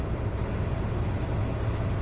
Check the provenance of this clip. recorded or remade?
recorded